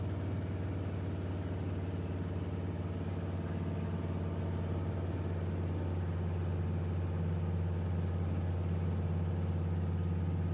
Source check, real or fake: real